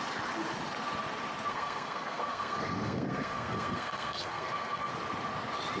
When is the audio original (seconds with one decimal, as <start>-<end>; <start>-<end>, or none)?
0.0-1.5; 4.9-5.8